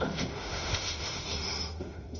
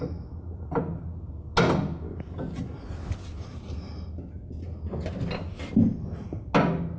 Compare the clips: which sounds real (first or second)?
second